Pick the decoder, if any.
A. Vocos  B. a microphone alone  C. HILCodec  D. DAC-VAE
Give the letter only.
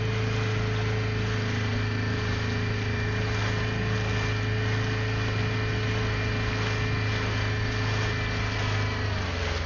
B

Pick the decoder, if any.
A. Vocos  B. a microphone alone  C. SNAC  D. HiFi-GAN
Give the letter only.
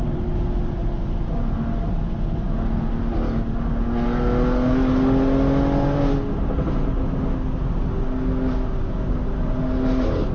B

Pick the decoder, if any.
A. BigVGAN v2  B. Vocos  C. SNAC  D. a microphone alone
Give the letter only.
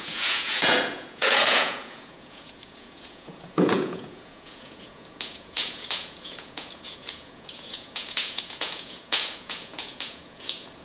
B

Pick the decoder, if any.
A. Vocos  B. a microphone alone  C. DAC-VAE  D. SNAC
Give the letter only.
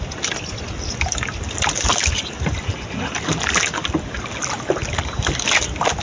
B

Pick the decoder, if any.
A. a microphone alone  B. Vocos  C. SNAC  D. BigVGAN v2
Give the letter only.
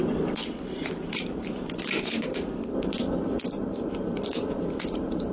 A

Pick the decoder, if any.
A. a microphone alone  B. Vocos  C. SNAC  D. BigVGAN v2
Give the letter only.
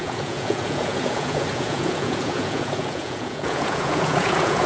B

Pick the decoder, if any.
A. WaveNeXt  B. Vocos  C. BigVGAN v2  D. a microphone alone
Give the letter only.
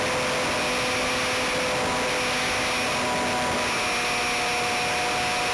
D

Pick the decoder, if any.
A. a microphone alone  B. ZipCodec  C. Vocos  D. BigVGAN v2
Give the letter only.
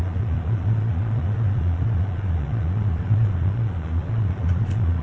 C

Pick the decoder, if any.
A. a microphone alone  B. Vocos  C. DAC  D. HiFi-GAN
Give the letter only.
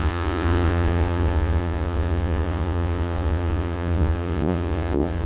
B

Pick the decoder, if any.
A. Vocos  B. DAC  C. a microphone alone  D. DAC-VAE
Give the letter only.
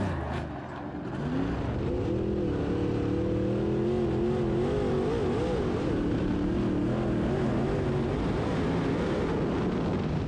C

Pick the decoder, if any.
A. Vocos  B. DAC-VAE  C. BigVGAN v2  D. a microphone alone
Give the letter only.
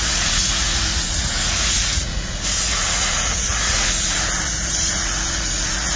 A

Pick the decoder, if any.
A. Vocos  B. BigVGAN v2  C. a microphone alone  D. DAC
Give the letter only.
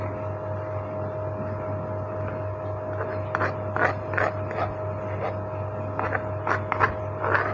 C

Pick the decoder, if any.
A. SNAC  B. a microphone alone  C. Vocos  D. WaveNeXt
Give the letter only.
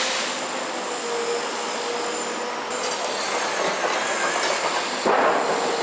B